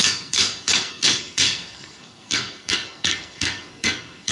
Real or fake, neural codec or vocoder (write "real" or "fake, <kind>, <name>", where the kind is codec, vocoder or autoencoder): fake, codec, SNAC